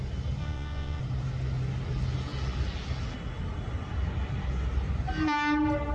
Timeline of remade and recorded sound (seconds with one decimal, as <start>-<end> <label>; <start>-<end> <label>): 0.0-0.4 recorded; 0.4-1.0 remade; 1.0-5.9 recorded